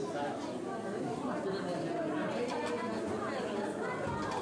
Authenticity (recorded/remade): recorded